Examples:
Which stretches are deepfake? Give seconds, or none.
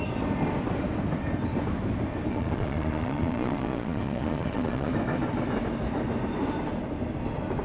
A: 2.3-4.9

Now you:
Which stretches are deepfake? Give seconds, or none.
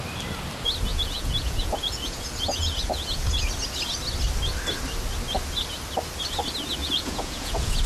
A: 0.9-3.5; 6.8-7.9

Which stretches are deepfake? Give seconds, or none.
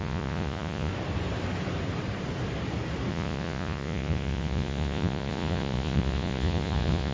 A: 0.0-0.9; 3.1-7.1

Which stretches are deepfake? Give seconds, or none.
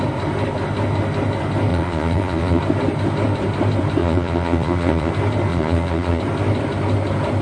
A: 1.7-2.6; 4.0-5.1; 5.5-6.2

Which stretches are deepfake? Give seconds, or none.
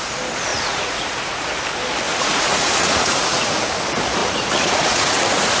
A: 0.5-1.5; 2.1-3.7; 4.2-5.6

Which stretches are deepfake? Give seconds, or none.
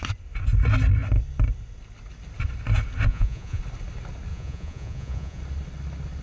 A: 3.1-3.6; 4.3-5.4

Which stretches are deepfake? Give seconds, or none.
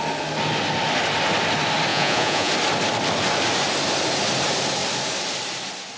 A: 1.9-2.5